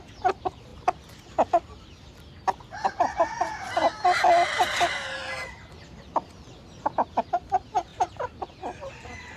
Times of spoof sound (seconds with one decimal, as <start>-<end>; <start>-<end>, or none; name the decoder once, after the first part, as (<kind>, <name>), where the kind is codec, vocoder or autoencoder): 7.9-8.5 (vocoder, BigVGAN v2)